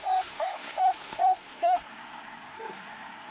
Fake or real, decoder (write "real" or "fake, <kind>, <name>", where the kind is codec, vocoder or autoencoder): fake, codec, SNAC